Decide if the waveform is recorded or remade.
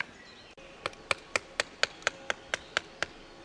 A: recorded